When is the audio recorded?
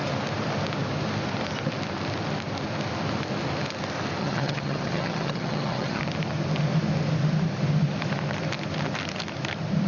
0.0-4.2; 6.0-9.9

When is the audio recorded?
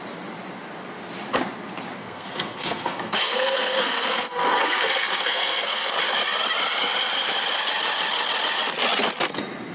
0.0-2.0; 5.9-9.7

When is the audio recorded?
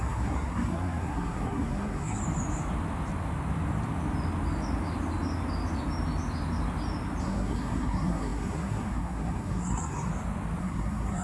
2.2-7.2; 10.1-10.6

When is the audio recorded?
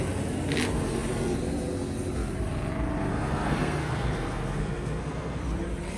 0.0-3.1; 5.4-6.0